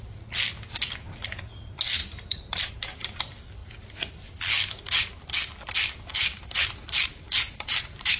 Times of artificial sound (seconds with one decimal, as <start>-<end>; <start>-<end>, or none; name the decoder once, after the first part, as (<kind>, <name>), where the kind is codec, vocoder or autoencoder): 2.0-2.6 (vocoder, BigVGAN v2); 6.1-8.2